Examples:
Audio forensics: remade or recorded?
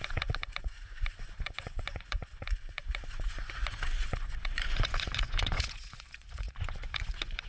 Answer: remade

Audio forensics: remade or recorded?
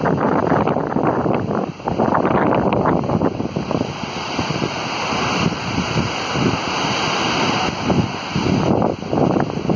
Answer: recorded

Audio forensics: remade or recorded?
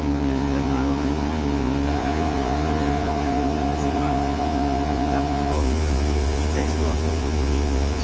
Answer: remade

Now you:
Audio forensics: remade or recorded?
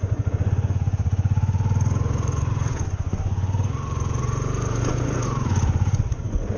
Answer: remade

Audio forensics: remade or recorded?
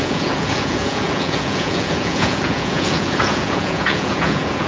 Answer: remade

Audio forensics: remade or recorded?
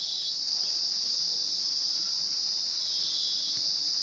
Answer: remade